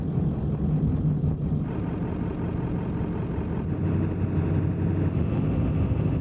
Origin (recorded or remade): recorded